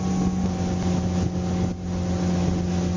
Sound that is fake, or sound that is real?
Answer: real